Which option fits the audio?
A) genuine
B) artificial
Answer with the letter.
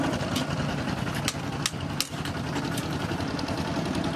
A